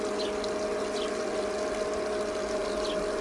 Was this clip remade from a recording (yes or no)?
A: no